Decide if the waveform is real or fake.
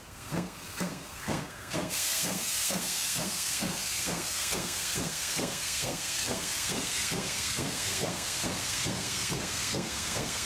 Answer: fake